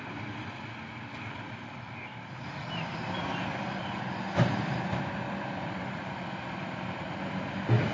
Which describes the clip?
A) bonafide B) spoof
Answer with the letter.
B